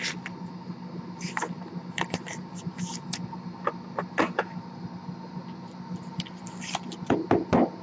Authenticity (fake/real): real